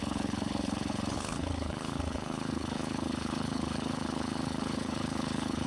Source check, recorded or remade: remade